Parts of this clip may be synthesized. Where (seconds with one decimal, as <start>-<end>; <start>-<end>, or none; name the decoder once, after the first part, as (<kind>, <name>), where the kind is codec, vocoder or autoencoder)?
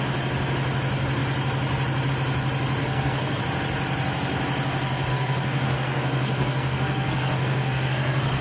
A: 2.8-3.4 (codec, SNAC); 5.1-8.4